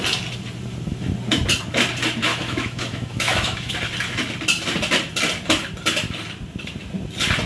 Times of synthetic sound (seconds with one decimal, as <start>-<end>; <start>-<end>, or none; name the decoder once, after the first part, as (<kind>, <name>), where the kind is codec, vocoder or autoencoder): 2.3-3.7 (autoencoder, DAC-VAE)